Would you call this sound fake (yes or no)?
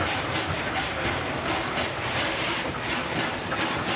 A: no